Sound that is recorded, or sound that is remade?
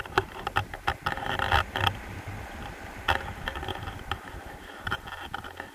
recorded